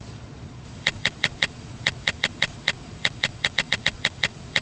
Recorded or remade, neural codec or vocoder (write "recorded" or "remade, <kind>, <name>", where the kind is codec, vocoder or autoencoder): remade, vocoder, Vocos